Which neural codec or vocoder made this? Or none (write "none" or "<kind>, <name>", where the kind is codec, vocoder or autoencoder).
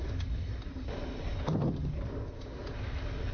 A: none